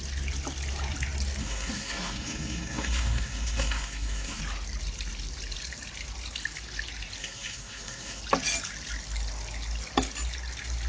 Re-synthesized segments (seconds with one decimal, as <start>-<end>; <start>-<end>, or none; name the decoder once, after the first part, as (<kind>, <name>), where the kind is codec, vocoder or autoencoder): 1.4-4.4 (codec, SNAC); 7.2-8.2